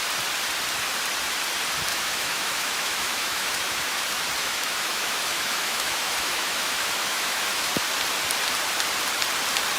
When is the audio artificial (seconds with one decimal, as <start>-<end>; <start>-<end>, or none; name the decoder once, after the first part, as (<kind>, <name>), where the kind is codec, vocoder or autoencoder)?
1.9-4.0 (autoencoder, DAC-VAE); 4.4-7.7